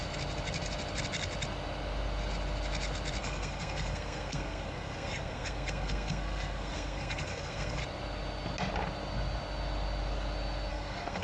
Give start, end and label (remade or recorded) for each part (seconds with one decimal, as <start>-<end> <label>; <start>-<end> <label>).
0.0-3.2 recorded; 3.2-7.8 remade; 7.8-10.7 recorded; 10.7-11.2 remade